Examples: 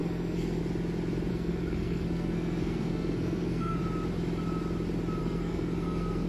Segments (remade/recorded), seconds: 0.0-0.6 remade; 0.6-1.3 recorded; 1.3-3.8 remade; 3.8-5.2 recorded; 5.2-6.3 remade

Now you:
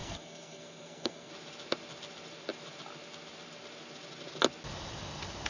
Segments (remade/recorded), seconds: 0.0-1.3 remade; 1.3-5.5 recorded

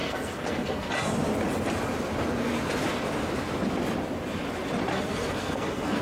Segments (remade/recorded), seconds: 0.0-0.9 remade; 0.9-4.9 recorded; 4.9-6.0 remade